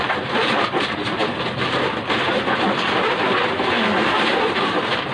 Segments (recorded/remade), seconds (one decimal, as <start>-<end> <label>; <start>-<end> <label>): 0.0-5.1 recorded